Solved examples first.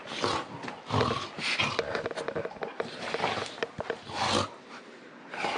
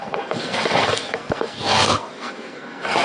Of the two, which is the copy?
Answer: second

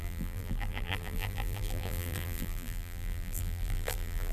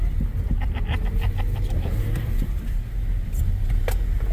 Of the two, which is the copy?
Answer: first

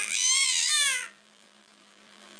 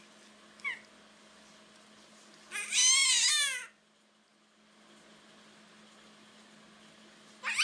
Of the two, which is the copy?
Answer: first